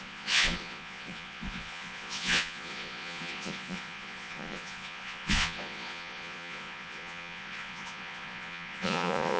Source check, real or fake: fake